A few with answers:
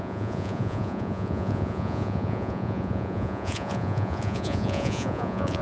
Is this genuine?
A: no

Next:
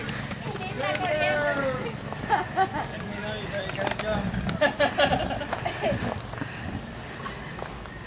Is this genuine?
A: yes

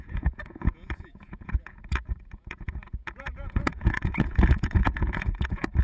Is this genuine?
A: no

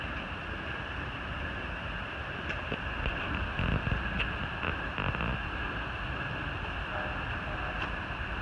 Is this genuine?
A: yes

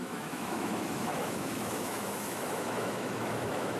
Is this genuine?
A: no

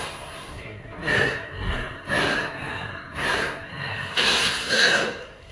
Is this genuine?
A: no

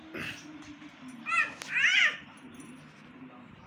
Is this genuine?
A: yes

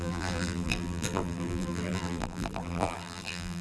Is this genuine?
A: no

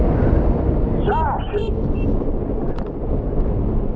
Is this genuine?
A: yes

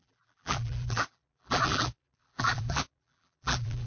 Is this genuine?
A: no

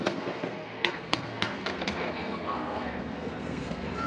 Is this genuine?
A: no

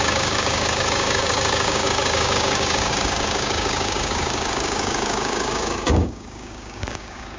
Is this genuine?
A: no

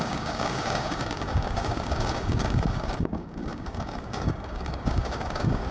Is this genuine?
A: no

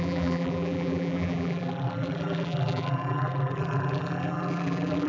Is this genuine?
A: no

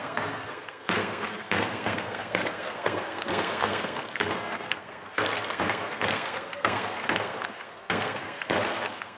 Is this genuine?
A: no